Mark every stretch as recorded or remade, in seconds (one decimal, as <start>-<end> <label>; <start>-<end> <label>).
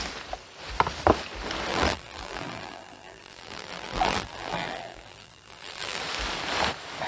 0.0-1.7 recorded; 1.7-6.0 remade; 6.0-7.1 recorded